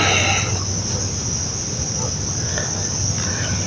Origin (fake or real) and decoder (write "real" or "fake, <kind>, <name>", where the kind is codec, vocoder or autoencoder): real